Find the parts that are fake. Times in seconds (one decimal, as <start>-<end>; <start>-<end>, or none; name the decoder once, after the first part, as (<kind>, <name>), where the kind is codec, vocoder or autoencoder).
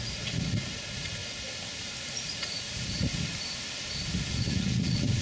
0.0-1.2 (vocoder, Vocos); 2.1-3.1; 4.3-5.2